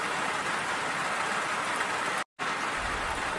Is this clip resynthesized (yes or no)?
no